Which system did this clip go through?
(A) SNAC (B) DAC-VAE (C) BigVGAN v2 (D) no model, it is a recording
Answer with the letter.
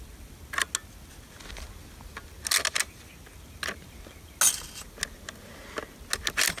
D